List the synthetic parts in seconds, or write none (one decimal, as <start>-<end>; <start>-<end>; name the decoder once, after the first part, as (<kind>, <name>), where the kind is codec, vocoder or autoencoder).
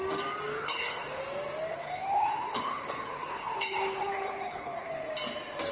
0.5-1.2 (codec, HILCodec); 1.7-5.1